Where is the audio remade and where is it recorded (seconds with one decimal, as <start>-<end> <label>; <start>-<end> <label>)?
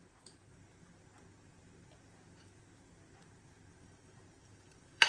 0.0-3.7 recorded; 3.7-5.1 remade